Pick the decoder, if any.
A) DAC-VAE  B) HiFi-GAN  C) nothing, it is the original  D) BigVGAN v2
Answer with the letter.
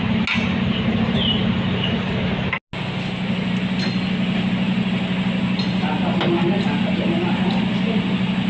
C